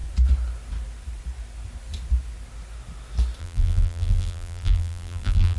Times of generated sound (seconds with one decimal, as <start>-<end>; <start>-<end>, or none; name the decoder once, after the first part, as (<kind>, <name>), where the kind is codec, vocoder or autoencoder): 3.4-5.6 (vocoder, BigVGAN v2)